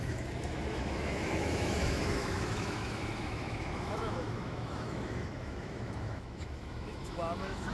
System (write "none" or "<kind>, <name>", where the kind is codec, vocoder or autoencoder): autoencoder, DAC-VAE